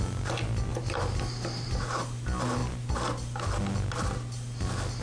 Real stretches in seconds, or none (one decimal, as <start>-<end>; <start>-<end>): 0.0-5.0